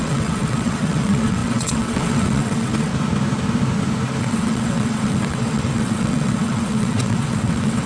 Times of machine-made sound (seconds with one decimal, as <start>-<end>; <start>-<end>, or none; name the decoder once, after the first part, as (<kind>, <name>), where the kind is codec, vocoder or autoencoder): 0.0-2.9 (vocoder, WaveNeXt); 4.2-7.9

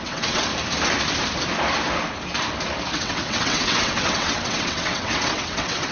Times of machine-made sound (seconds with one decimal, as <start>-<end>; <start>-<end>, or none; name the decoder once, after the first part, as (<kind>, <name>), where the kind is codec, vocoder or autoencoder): 0.0-0.5 (vocoder, WaveNeXt); 2.9-5.9

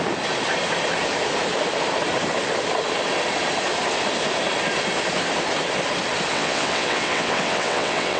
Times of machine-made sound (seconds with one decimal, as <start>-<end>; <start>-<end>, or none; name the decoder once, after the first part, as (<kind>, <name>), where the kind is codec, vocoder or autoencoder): 6.3-8.2 (vocoder, WaveNeXt)